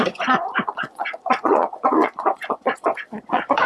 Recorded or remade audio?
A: remade